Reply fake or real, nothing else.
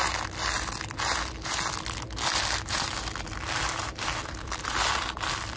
real